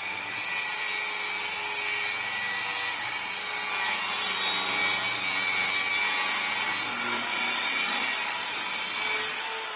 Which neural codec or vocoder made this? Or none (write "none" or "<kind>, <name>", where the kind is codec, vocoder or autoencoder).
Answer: none